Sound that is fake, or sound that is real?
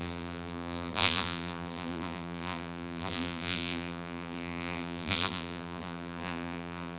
fake